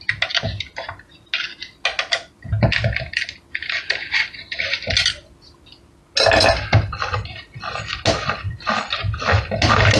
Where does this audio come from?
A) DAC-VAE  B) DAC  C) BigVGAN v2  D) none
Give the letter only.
D